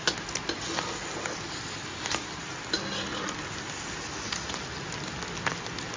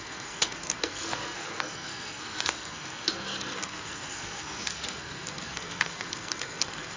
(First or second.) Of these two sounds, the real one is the first